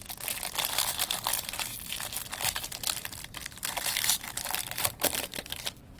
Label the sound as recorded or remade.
recorded